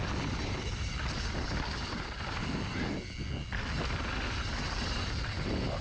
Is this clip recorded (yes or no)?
yes